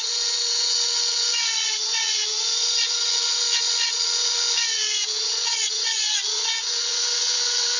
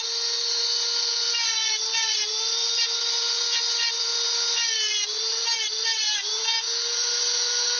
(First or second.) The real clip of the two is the second